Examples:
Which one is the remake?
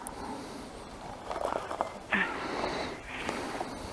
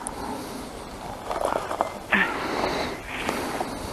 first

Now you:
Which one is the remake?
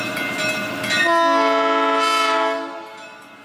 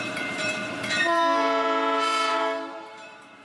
second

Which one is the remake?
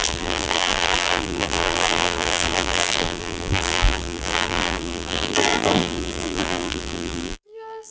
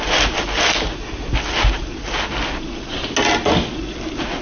first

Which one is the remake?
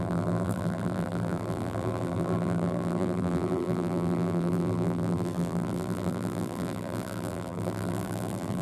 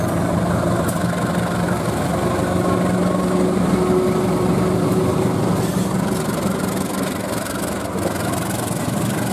first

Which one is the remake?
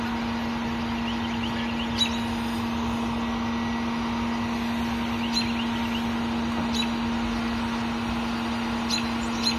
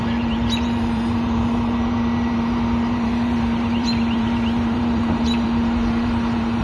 second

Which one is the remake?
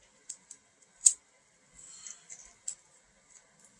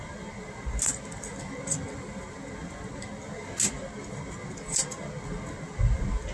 first